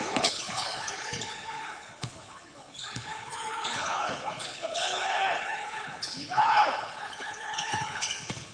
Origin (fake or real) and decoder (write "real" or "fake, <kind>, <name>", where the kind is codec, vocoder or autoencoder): fake, codec, HILCodec